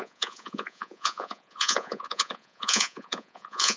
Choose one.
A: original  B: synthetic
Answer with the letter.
B